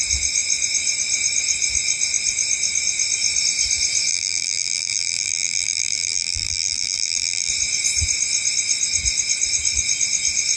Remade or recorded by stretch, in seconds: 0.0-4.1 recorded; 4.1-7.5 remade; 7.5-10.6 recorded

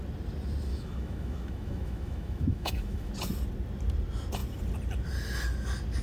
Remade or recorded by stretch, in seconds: 0.0-0.7 recorded; 0.7-3.1 remade; 3.1-6.0 recorded

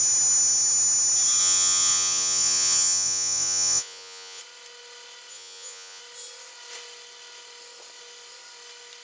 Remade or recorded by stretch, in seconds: 0.0-1.4 recorded; 1.4-4.4 remade; 4.4-5.3 recorded; 5.3-6.0 remade; 6.0-9.0 recorded

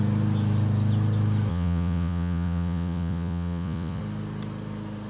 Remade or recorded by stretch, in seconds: 0.0-1.5 recorded; 1.5-4.0 remade; 4.0-5.1 recorded